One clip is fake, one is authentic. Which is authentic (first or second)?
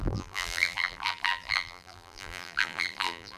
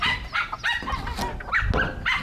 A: second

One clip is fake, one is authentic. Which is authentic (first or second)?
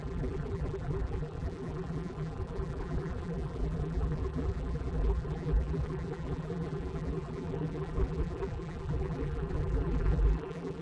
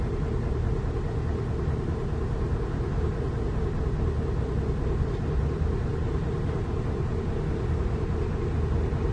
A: second